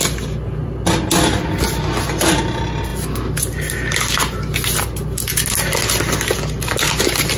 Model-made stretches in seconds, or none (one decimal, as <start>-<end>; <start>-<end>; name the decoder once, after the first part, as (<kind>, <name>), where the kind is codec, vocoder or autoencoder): none